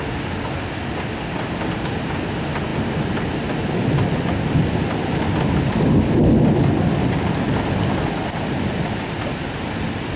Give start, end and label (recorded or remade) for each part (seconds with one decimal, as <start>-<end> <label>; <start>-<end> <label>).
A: 0.0-2.7 recorded; 2.7-5.7 remade; 5.7-10.2 recorded